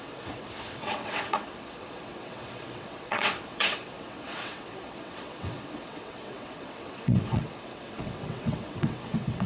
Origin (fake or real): fake